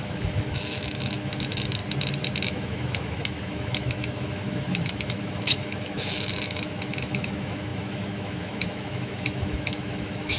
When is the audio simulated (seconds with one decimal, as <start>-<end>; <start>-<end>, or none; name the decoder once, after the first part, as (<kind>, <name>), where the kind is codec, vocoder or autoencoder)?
0.0-1.8 (autoencoder, DAC-VAE); 2.4-10.4